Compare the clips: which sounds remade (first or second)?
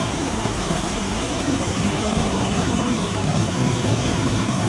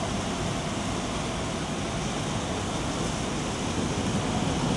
first